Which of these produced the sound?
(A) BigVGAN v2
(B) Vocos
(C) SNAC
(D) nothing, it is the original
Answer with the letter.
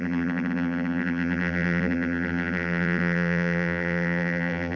A